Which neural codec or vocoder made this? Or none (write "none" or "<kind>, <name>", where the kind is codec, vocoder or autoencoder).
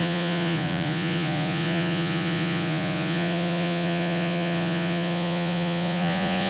vocoder, Vocos